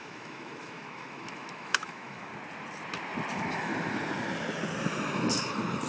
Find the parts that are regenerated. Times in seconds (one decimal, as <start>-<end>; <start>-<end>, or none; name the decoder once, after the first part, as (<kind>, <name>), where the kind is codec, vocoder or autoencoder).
0.0-2.3 (autoencoder, DAC-VAE); 3.3-3.7